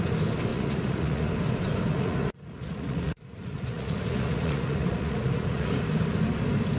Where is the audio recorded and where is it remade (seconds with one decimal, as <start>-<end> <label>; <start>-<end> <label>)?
0.0-0.5 recorded; 0.5-1.3 remade; 1.3-1.9 recorded; 1.9-5.7 remade; 5.7-6.8 recorded